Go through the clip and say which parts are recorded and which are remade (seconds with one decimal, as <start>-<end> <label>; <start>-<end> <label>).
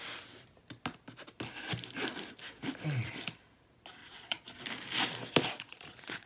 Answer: 0.0-4.0 recorded; 4.0-4.6 remade; 4.6-5.4 recorded; 5.4-6.3 remade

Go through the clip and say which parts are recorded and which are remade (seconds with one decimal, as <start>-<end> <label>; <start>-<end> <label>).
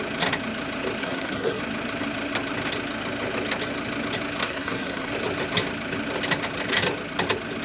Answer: 0.0-1.0 recorded; 1.0-1.6 remade; 1.6-4.4 recorded; 4.4-5.1 remade; 5.1-7.6 recorded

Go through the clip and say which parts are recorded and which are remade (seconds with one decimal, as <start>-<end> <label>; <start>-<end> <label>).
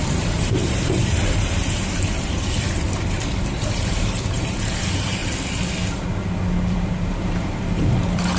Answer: 0.0-5.2 remade; 5.2-6.7 recorded; 6.7-8.4 remade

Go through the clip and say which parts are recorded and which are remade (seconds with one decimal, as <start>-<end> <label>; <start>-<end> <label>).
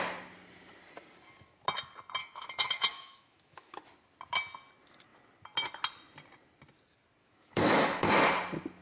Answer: 0.0-2.2 recorded; 2.2-3.8 remade; 3.8-7.2 recorded; 7.2-8.1 remade; 8.1-8.8 recorded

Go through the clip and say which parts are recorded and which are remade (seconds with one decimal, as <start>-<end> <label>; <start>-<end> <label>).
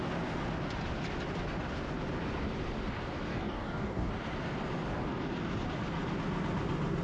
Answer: 0.0-3.3 recorded; 3.3-4.1 remade; 4.1-7.0 recorded